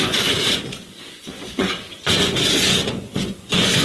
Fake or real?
fake